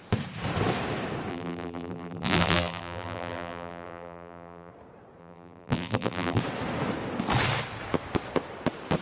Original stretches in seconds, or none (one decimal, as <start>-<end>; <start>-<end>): 0.0-1.3; 4.7-5.2; 6.4-9.0